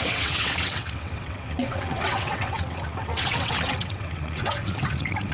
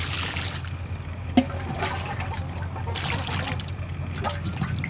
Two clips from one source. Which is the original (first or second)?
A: second